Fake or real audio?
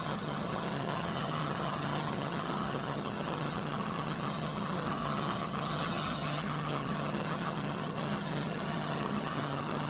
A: fake